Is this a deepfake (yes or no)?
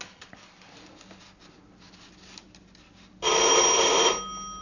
no